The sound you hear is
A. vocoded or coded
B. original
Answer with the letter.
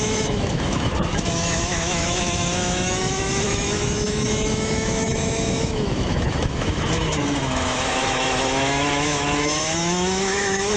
A